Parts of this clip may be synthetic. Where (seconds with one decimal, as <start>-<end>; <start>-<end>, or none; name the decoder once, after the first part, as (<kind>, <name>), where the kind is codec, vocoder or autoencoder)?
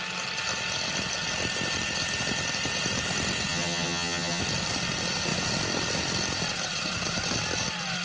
3.5-4.4 (vocoder, HiFi-GAN)